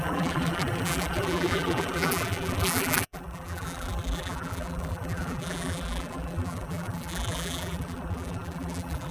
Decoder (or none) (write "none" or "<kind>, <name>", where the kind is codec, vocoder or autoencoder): vocoder, BigVGAN v2